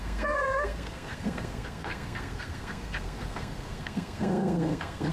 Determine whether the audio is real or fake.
fake